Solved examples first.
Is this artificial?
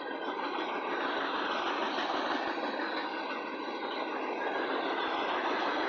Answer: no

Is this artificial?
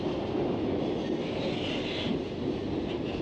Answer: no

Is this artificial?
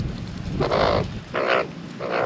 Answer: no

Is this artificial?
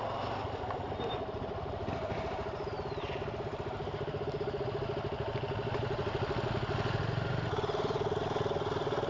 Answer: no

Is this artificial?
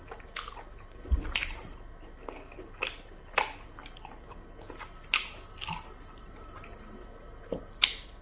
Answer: no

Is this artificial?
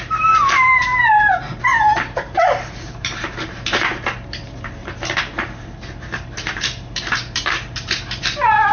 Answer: yes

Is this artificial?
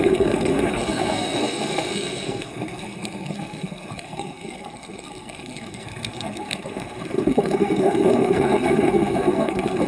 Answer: yes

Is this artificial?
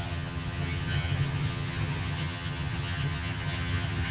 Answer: yes